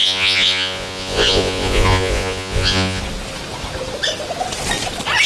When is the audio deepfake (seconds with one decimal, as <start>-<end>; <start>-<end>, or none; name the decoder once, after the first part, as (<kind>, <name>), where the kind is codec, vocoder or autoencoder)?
0.0-3.0 (vocoder, Vocos)